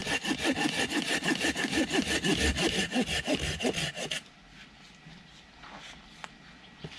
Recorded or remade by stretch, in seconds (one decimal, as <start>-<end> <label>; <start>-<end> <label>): 0.0-7.0 recorded